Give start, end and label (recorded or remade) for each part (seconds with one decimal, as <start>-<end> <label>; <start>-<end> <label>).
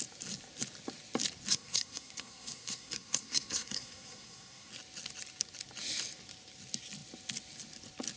0.0-1.5 recorded; 1.5-4.7 remade; 4.7-8.2 recorded